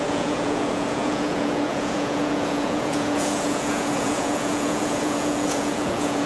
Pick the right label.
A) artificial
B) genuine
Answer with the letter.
A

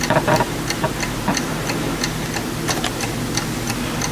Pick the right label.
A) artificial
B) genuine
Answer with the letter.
B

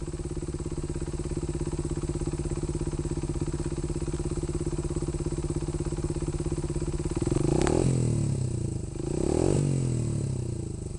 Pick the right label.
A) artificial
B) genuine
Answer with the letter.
B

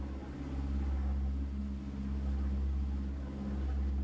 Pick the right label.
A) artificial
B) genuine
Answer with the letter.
B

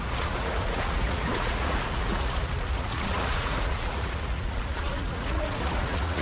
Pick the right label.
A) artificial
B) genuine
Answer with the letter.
A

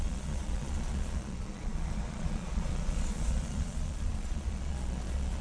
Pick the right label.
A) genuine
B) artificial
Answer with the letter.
B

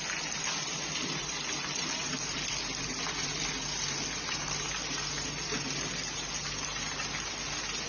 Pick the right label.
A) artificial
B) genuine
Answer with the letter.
B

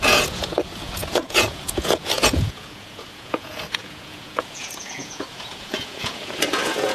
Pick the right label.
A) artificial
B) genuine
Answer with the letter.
A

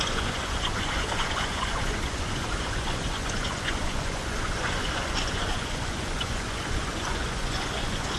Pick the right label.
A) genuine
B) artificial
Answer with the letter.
B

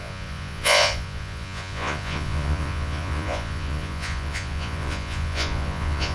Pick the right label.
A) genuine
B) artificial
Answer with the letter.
B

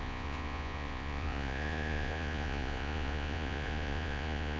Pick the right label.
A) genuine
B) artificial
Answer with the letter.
B